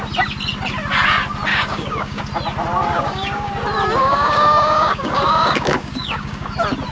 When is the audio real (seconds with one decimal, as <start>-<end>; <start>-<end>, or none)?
0.0-1.5; 2.2-2.9; 3.5-4.0; 6.5-6.9